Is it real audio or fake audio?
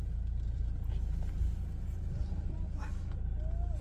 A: real